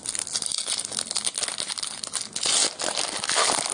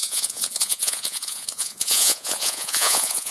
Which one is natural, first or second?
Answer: first